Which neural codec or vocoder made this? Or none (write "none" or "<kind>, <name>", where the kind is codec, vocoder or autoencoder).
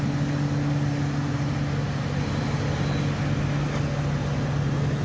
none